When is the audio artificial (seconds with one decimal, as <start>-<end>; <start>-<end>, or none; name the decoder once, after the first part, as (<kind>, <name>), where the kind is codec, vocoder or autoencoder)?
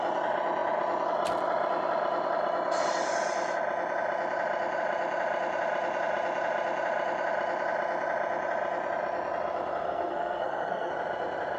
9.8-10.9 (codec, SNAC)